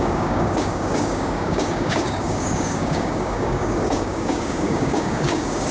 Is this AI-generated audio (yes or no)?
yes